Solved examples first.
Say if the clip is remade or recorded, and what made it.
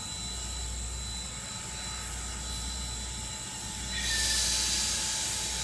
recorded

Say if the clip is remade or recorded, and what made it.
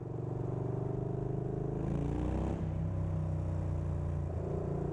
recorded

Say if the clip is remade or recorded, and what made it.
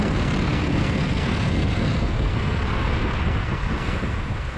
remade, codec, SNAC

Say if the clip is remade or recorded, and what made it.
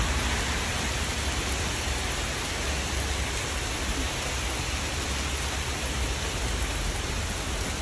recorded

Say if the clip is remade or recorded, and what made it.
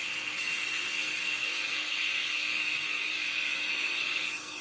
remade, codec, SNAC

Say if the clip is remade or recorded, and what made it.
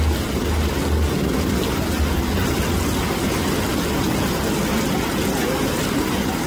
recorded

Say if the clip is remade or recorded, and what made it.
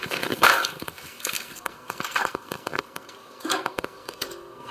remade, codec, SNAC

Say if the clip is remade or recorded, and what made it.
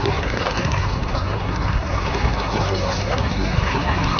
remade, codec, SNAC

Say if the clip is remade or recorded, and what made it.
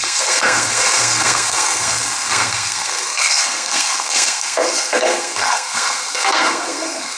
remade, codec, SNAC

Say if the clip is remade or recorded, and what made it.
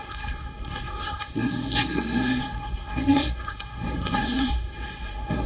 remade, codec, SNAC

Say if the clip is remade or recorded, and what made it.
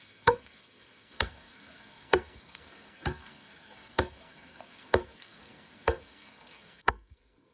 remade, codec, SNAC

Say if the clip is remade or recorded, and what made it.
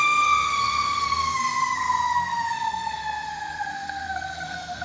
remade, codec, SNAC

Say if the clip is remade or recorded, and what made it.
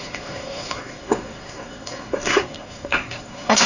remade, codec, SNAC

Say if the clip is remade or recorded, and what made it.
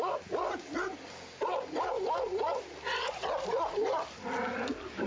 recorded